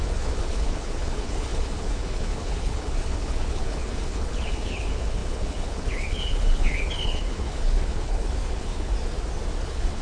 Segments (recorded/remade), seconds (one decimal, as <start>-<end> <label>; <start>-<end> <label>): 0.0-8.9 remade; 8.9-9.6 recorded; 9.6-10.0 remade